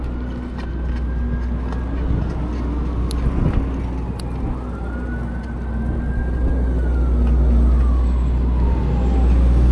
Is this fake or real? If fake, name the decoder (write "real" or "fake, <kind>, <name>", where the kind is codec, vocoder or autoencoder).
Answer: real